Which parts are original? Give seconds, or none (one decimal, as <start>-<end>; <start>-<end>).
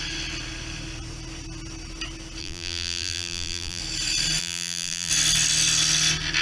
0.0-2.4; 3.8-4.4; 5.1-6.4